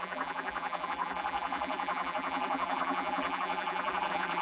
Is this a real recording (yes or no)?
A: no